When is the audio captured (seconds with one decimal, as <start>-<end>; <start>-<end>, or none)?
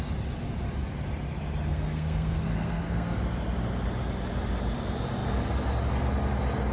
0.0-1.7; 3.2-6.7